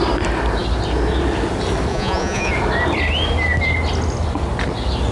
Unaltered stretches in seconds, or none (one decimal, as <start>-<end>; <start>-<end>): 0.0-1.9; 2.5-5.1